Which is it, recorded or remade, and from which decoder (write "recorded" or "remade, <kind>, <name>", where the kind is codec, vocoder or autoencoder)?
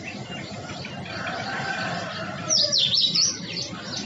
recorded